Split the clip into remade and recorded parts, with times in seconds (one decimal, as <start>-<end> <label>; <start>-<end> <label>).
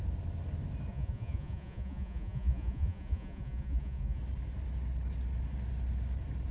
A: 0.0-0.9 recorded; 0.9-4.2 remade; 4.2-6.5 recorded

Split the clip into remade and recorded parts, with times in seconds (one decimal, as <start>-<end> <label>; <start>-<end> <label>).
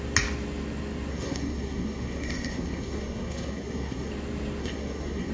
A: 0.0-1.1 recorded; 1.1-4.1 remade; 4.1-4.6 recorded; 4.6-5.3 remade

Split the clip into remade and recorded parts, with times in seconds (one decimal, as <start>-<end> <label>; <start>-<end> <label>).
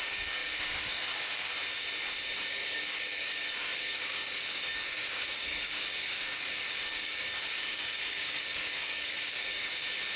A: 0.0-1.5 remade; 1.5-2.5 recorded; 2.5-10.2 remade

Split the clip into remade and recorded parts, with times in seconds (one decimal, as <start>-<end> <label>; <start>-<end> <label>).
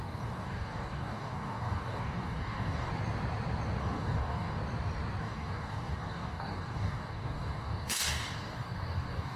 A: 0.0-2.9 remade; 2.9-3.8 recorded; 3.8-4.6 remade; 4.6-5.2 recorded; 5.2-9.4 remade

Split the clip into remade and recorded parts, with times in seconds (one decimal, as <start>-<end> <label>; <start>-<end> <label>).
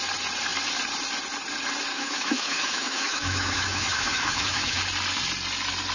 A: 0.0-1.9 recorded; 1.9-4.8 remade; 4.8-5.9 recorded